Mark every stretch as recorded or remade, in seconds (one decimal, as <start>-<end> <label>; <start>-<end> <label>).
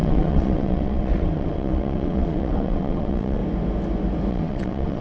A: 0.0-3.4 remade; 3.4-4.3 recorded; 4.3-5.0 remade